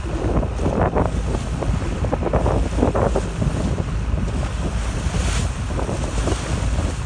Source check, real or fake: real